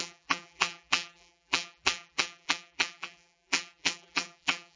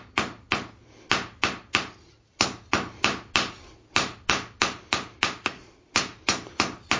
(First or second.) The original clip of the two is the second